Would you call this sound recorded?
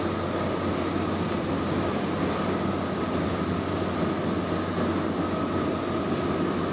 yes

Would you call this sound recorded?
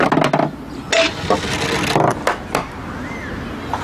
yes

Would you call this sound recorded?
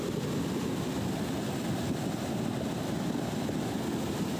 yes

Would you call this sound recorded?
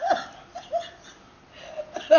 yes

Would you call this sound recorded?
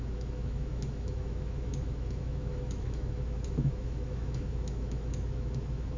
no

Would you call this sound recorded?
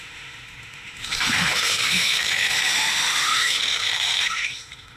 no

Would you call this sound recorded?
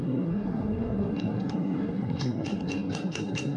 no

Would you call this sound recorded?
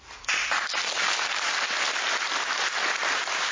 yes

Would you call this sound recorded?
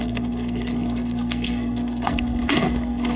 no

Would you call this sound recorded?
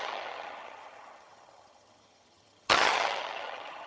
no